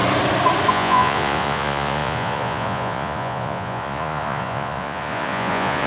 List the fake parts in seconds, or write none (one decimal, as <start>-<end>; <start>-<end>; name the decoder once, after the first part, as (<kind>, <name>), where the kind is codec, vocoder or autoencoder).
0.7-5.9 (vocoder, Vocos)